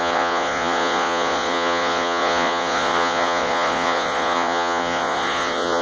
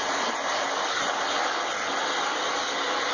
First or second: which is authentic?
second